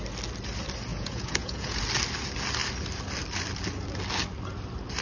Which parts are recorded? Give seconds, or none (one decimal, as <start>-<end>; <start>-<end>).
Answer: 0.0-0.9; 1.8-5.0